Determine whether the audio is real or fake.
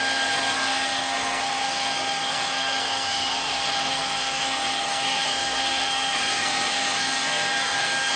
fake